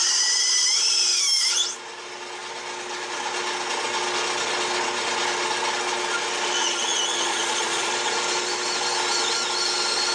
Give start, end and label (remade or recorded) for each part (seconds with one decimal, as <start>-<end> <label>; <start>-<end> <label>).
0.0-6.6 recorded; 6.6-7.9 remade; 7.9-10.1 recorded